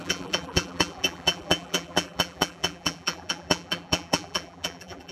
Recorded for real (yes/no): no